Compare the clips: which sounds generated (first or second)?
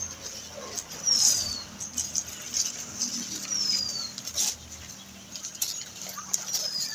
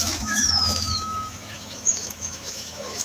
second